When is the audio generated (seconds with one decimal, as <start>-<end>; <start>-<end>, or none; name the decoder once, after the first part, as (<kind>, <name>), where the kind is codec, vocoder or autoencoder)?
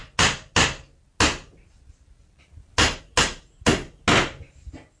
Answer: none